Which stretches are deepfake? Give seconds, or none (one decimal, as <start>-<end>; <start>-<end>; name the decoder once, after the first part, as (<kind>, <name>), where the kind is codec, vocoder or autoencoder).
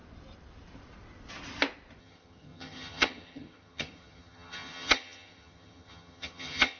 2.0-6.8 (vocoder, HiFi-GAN)